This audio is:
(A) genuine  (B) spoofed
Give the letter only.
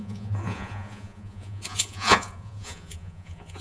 B